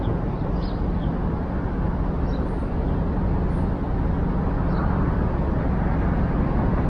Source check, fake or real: real